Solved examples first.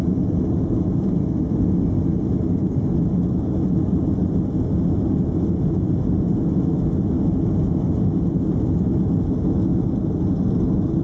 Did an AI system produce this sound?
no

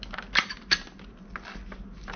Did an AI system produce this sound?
no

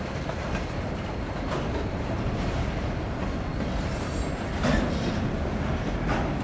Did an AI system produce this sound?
no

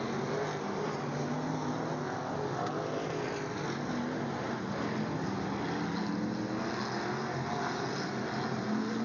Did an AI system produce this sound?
no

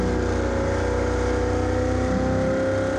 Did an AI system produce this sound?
no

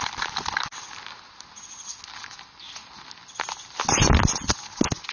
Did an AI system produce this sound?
no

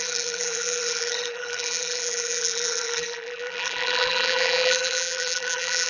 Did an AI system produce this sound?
yes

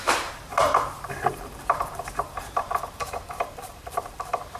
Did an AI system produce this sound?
yes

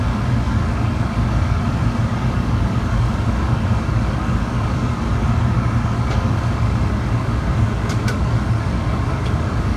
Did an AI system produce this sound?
yes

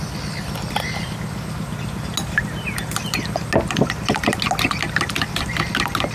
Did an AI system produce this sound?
no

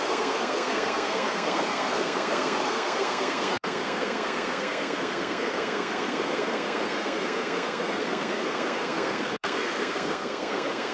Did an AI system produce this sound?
yes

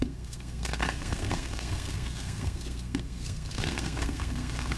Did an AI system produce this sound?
yes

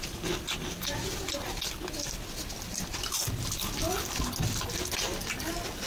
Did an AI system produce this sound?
no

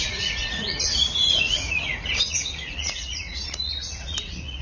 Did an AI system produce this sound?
yes